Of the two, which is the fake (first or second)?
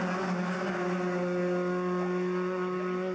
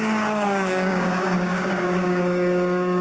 second